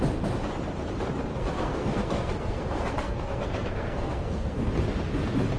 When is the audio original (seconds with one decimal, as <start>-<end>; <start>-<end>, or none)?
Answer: 0.0-1.3; 4.7-5.6